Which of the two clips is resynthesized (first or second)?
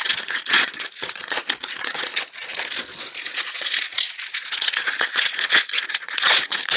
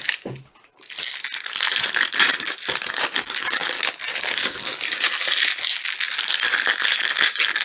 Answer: first